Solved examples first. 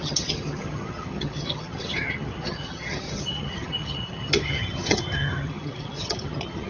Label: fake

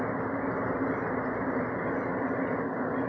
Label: real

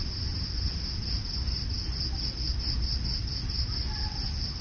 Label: real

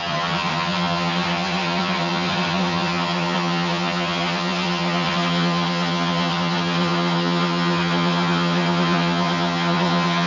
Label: fake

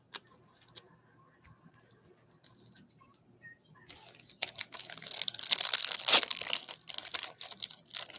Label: real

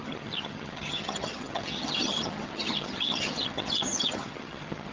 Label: fake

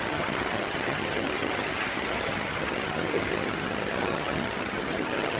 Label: fake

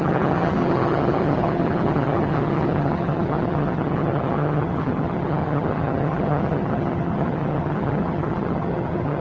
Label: fake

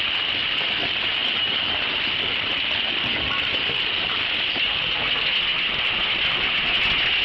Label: real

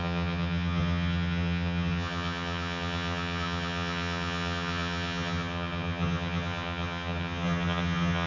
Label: fake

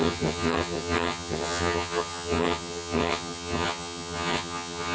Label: fake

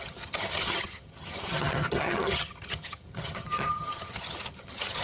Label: fake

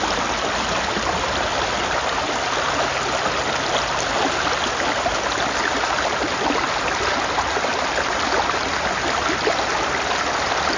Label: real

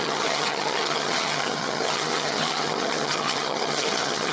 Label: fake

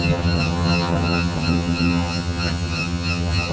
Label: fake